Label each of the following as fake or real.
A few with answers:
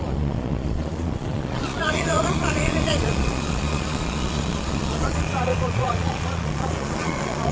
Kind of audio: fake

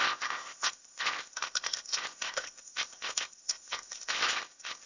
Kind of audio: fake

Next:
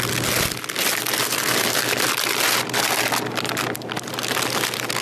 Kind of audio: real